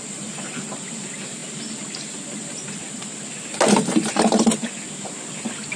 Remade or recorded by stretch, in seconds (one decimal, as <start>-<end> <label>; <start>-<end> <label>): 0.0-5.8 recorded